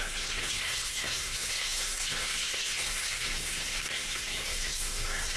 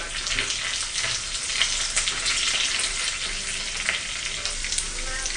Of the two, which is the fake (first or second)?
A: first